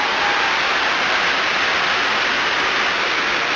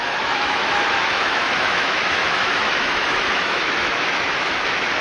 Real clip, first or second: first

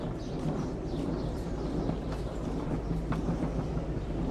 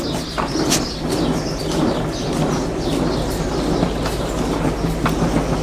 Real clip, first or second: second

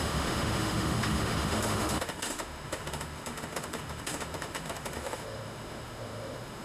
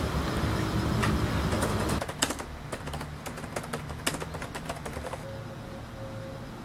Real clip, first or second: second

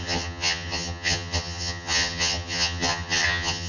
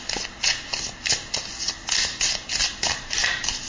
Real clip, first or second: second